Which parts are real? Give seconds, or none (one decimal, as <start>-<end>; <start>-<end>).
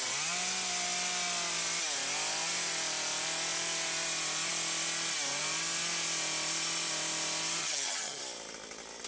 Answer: 0.0-7.6; 8.2-9.1